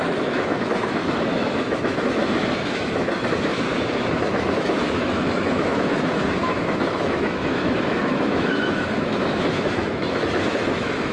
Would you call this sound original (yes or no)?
no